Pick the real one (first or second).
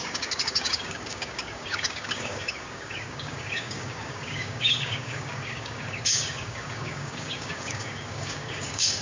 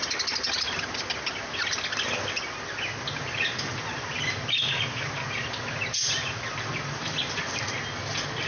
second